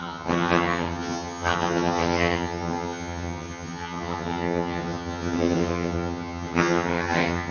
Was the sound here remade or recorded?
remade